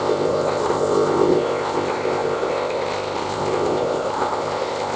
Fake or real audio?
fake